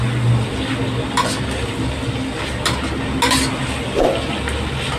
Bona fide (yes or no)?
yes